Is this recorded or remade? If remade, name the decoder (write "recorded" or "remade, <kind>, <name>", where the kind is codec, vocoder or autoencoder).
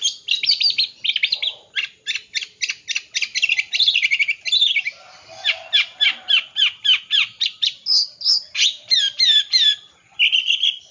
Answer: recorded